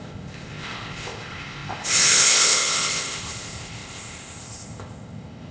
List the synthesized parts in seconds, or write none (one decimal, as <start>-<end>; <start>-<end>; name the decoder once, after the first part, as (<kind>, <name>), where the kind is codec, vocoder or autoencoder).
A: 0.0-5.5 (codec, ZipCodec)